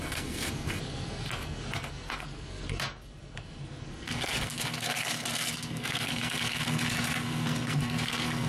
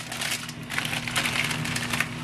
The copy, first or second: first